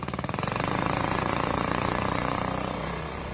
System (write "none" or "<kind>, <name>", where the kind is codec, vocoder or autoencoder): vocoder, Vocos